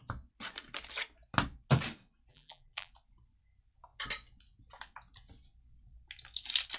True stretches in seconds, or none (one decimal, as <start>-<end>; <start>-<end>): 0.0-2.3; 2.9-6.8